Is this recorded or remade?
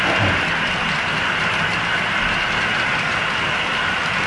recorded